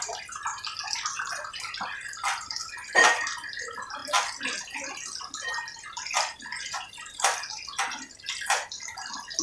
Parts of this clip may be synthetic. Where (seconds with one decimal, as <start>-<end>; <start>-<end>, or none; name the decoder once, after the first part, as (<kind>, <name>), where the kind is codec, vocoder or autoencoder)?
none